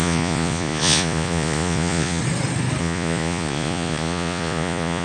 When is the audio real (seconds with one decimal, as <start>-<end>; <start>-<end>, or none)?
2.2-2.8